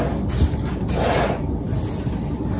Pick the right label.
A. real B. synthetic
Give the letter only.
B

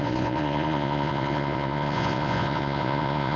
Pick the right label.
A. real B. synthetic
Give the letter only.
B